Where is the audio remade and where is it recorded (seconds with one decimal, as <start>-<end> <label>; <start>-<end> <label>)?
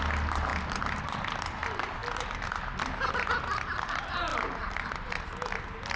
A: 0.0-6.0 recorded